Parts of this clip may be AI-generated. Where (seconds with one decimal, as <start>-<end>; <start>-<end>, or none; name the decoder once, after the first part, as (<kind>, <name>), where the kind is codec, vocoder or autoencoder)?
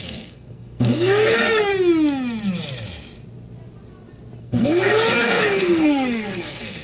0.0-1.7 (codec, SNAC); 4.4-6.8